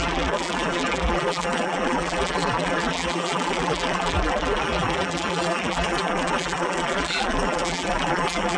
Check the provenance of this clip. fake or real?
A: fake